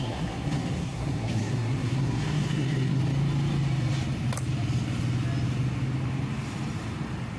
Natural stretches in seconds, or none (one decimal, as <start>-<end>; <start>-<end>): 3.0-7.4